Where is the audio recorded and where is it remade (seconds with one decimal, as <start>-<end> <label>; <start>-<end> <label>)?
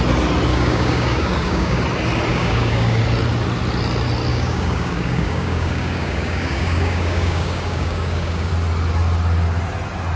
0.0-0.5 recorded; 0.5-1.8 remade; 1.8-2.3 recorded; 2.3-3.0 remade; 3.0-4.3 recorded; 4.3-8.5 remade; 8.5-10.2 recorded